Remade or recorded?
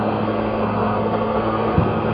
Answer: remade